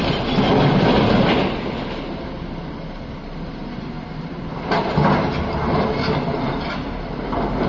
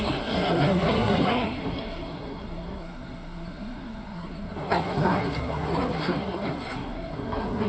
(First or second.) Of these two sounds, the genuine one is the first